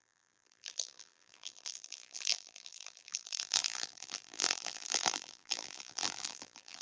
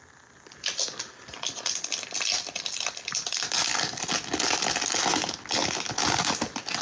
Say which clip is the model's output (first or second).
first